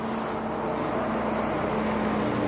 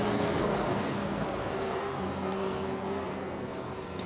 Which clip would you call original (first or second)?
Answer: first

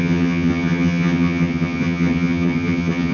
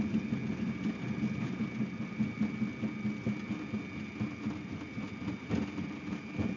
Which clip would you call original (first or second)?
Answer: second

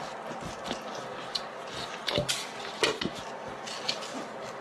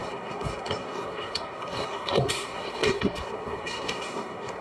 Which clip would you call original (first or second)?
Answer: first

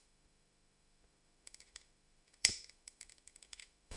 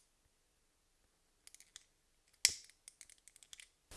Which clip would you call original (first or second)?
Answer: second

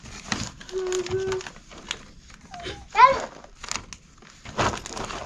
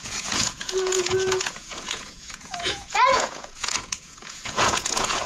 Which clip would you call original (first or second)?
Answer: first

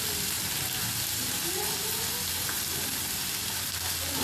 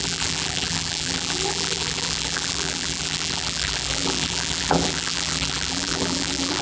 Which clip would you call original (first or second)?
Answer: first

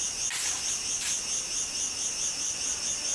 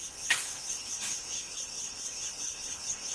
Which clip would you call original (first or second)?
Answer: first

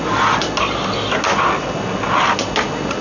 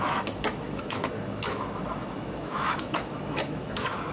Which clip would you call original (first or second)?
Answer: first